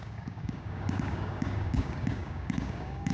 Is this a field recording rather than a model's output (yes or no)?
no